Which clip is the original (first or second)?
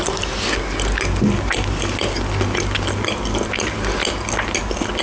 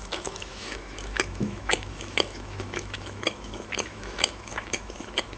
first